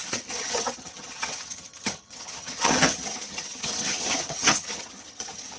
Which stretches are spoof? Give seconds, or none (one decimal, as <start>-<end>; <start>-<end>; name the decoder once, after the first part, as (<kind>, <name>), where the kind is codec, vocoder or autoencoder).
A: 0.0-5.6 (vocoder, HiFi-GAN)

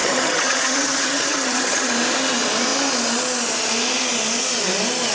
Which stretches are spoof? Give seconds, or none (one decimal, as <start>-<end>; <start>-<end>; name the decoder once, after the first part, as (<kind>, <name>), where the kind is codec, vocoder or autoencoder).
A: 0.0-1.9 (vocoder, HiFi-GAN)

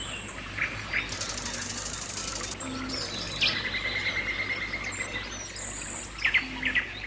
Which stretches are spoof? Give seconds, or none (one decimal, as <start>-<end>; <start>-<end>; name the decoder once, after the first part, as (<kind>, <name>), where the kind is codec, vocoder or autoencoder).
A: none

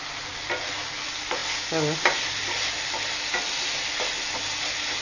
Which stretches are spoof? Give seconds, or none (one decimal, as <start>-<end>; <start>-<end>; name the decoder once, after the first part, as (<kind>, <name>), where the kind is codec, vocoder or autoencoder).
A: none

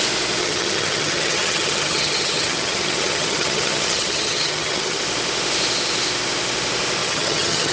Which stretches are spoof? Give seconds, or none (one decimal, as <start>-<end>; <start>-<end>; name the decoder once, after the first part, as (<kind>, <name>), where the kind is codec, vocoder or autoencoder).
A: 0.4-5.0 (vocoder, HiFi-GAN); 7.0-7.7

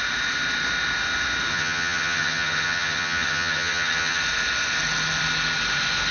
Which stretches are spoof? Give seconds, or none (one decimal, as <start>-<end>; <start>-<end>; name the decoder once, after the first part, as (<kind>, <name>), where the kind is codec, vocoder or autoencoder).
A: 1.5-4.2 (vocoder, HiFi-GAN)

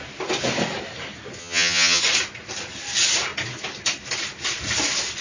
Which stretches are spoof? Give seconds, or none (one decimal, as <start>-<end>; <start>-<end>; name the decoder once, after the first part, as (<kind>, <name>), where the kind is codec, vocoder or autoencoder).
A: 1.4-2.0 (vocoder, HiFi-GAN)